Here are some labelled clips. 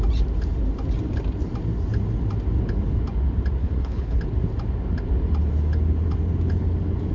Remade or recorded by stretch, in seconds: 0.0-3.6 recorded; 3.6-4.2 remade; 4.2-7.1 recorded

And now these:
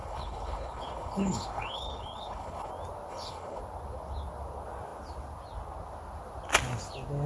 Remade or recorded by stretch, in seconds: 0.0-2.7 remade; 2.7-3.1 recorded; 3.1-3.6 remade; 3.6-7.3 recorded

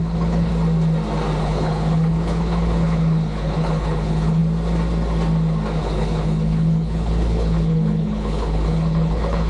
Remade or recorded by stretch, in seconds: 0.0-0.5 remade; 0.5-1.4 recorded; 1.4-4.4 remade; 4.4-5.8 recorded; 5.8-9.5 remade

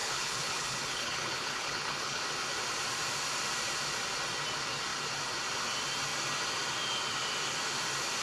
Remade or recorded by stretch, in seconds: 0.0-2.2 remade; 2.2-8.2 recorded

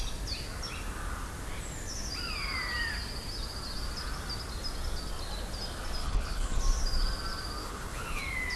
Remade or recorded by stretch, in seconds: 0.0-6.0 recorded; 6.0-6.6 remade; 6.6-7.6 recorded; 7.6-8.2 remade; 8.2-8.6 recorded

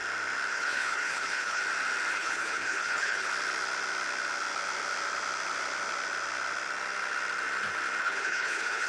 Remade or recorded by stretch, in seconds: 0.0-0.5 recorded; 0.5-1.6 remade; 1.6-2.1 recorded; 2.1-3.3 remade; 3.3-8.0 recorded; 8.0-8.9 remade

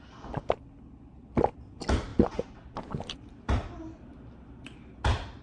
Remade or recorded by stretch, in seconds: 0.0-5.4 recorded

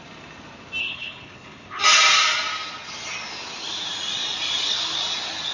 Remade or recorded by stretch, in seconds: 0.0-0.8 recorded; 0.8-1.8 remade; 1.8-5.5 recorded